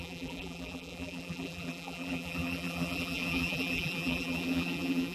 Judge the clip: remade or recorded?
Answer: remade